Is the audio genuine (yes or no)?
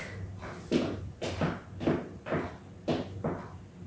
yes